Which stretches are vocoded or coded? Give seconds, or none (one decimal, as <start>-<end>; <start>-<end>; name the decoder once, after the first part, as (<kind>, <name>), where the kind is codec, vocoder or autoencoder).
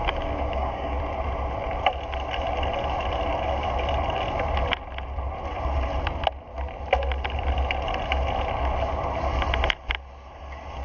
0.0-1.0 (codec, DAC)